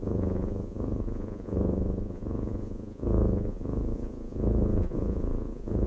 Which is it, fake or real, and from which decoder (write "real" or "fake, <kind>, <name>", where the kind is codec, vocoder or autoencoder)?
fake, vocoder, Vocos